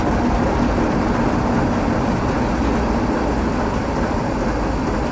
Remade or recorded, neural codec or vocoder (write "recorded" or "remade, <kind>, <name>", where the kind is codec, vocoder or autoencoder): recorded